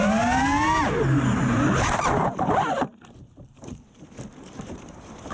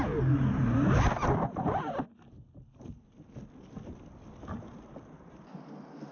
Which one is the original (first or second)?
second